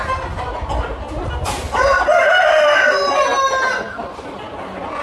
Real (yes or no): yes